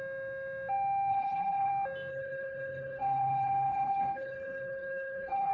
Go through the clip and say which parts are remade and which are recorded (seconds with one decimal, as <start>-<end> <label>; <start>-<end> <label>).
0.0-1.1 recorded; 1.1-1.7 remade; 1.7-2.1 recorded; 2.1-5.5 remade